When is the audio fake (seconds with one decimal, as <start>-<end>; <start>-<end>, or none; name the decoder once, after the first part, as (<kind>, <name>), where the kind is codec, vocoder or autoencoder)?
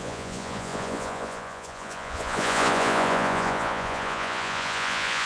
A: 0.0-5.3 (vocoder, Vocos)